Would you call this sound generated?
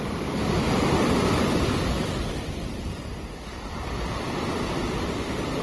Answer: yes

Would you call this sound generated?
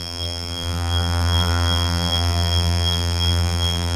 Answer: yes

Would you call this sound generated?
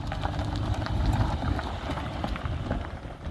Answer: no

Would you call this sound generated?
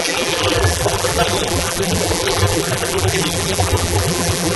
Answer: yes